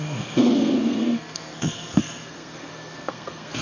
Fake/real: fake